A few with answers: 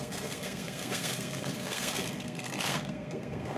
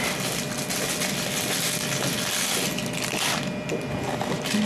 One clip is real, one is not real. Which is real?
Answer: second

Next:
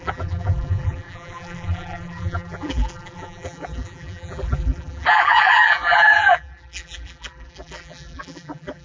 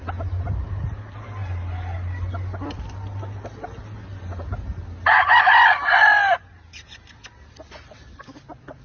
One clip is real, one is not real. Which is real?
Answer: second